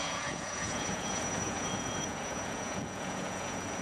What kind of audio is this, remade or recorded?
remade